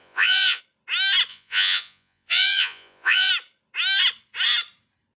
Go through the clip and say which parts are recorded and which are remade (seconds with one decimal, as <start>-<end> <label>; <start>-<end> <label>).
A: 0.0-0.6 remade; 0.6-1.3 recorded; 1.3-3.3 remade; 3.3-5.2 recorded